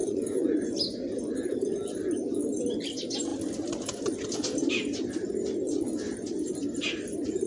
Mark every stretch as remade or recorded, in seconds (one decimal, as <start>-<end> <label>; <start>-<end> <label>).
0.0-0.8 remade; 0.8-7.5 recorded